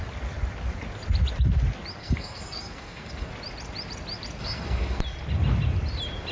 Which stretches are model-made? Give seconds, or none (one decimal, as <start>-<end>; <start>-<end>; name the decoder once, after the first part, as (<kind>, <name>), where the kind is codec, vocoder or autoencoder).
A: 2.0-3.3 (codec, SNAC); 4.4-5.0